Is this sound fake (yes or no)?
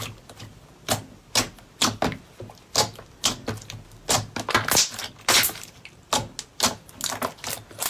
no